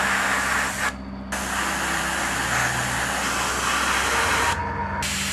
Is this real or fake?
real